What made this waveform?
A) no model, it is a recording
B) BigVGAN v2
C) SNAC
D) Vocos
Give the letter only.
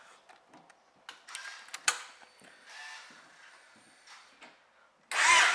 A